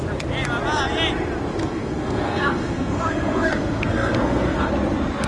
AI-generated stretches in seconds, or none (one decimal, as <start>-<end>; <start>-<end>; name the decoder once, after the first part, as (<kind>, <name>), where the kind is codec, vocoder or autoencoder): 1.5-4.7 (codec, SNAC)